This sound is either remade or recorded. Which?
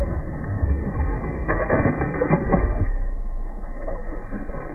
remade